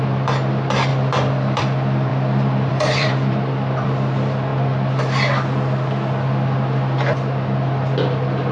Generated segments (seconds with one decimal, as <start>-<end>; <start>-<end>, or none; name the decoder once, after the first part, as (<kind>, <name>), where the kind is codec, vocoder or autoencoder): 0.0-4.5 (vocoder, BigVGAN v2)